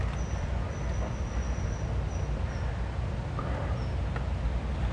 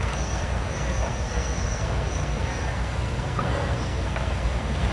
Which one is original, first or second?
first